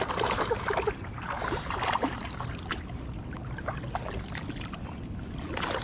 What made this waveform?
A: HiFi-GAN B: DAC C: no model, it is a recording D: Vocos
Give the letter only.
C